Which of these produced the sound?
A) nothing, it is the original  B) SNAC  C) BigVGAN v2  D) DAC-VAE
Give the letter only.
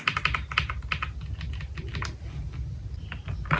A